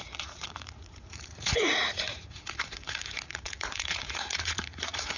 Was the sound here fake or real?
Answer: fake